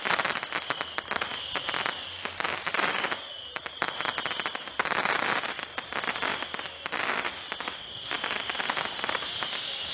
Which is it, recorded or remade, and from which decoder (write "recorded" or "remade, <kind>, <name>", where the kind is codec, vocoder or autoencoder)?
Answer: recorded